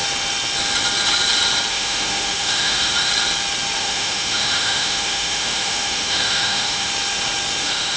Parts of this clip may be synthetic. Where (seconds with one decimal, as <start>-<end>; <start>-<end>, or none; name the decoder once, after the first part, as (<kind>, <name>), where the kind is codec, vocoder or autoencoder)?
1.7-3.1 (autoencoder, DAC-VAE); 3.8-6.9; 7.6-8.0